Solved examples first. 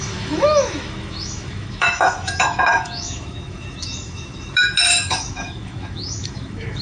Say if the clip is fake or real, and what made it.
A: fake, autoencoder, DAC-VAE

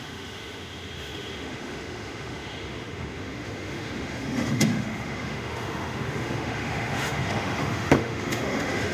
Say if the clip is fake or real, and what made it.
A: fake, autoencoder, DAC-VAE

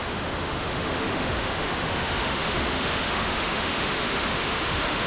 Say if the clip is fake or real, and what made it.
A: fake, autoencoder, DAC-VAE